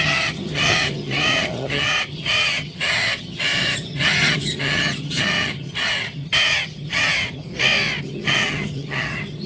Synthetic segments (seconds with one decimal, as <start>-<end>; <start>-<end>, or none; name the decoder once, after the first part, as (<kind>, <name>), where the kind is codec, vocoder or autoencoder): 0.0-7.5 (vocoder, HiFi-GAN); 8.0-9.5